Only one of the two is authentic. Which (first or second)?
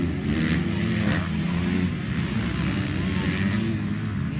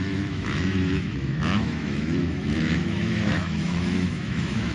first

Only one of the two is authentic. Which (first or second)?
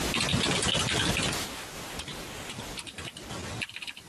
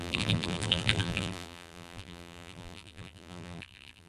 first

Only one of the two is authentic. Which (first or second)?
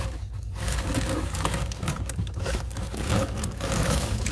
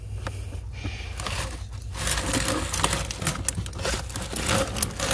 second